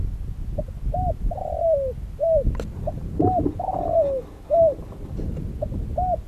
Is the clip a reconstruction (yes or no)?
no